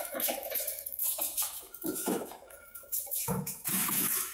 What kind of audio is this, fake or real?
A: fake